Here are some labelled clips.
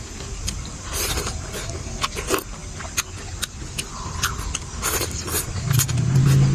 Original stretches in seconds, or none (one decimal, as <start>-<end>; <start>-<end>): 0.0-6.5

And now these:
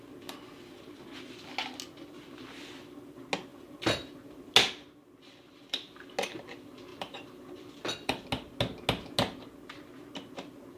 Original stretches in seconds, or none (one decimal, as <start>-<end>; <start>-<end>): 0.0-3.5; 4.1-6.9; 8.3-10.8

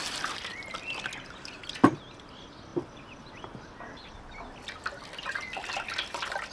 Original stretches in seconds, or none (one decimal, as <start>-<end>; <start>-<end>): 0.0-6.5